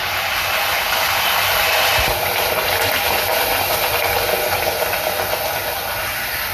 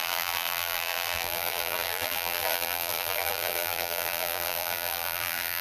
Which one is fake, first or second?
second